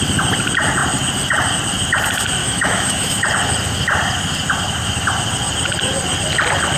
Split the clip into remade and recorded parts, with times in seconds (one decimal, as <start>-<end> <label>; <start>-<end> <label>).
0.0-2.4 recorded; 2.4-3.2 remade; 3.2-6.8 recorded